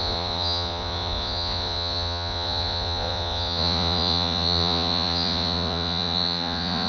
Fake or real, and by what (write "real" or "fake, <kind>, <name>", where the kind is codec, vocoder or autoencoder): fake, vocoder, Vocos